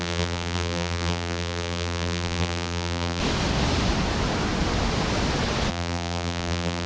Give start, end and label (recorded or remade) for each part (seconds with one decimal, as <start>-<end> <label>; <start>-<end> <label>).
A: 0.0-3.2 remade; 3.2-5.7 recorded; 5.7-6.9 remade